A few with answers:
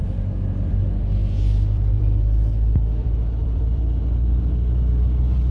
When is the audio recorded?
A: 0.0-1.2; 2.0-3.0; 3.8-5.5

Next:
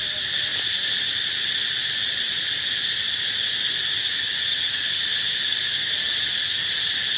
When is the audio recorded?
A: 0.0-4.5; 5.0-7.2

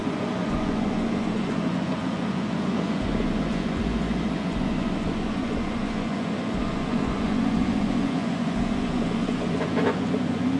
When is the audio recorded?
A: none